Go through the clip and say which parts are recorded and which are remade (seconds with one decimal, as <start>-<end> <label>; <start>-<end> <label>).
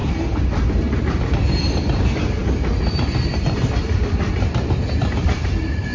0.0-1.0 recorded; 1.0-2.4 remade; 2.4-3.9 recorded; 3.9-5.9 remade